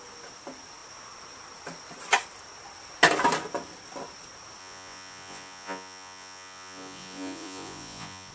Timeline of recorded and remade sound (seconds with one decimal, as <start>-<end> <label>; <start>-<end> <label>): 0.0-4.6 recorded; 4.6-8.3 remade